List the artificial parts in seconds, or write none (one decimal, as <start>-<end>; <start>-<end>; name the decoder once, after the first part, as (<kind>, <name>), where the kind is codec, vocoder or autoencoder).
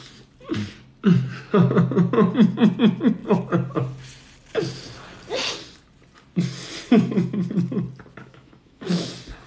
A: 1.3-1.8 (autoencoder, DAC-VAE); 8.2-9.1